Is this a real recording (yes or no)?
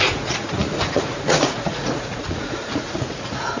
no